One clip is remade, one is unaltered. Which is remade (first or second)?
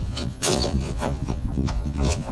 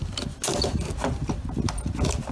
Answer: first